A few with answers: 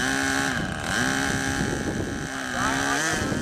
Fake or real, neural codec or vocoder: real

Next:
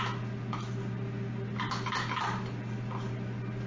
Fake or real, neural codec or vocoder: real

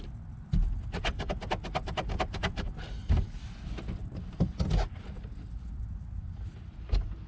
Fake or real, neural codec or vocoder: real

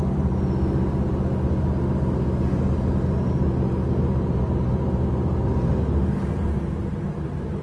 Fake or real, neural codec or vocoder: real